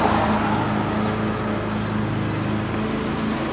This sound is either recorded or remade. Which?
recorded